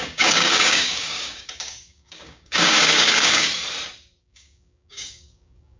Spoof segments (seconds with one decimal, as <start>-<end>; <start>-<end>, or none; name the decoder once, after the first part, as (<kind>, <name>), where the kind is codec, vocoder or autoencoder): 0.0-3.5 (codec, DAC); 4.2-5.8